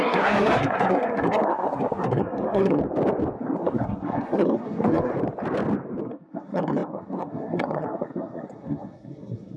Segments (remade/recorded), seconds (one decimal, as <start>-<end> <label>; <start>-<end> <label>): 0.0-2.8 remade; 2.8-3.4 recorded; 3.4-5.1 remade; 5.1-6.0 recorded; 6.0-9.6 remade